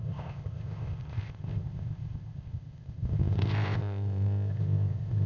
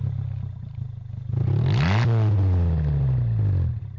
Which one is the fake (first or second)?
first